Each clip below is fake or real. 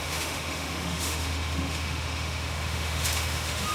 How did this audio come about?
fake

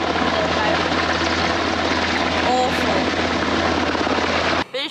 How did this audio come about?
real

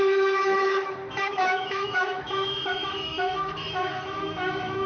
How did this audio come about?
fake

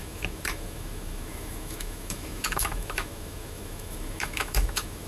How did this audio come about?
fake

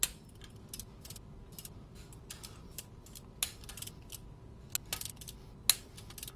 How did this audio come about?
real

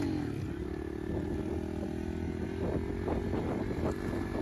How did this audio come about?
real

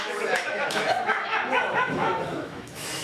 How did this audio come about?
fake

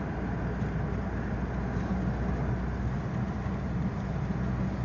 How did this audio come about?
real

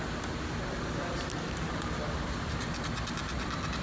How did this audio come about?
real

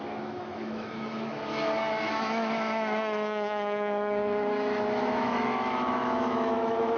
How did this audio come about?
fake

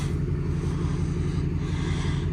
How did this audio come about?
real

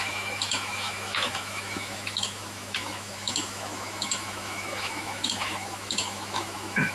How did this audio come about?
fake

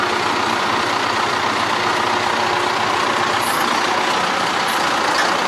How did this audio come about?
real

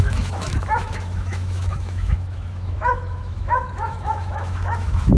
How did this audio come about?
fake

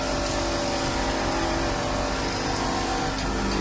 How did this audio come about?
real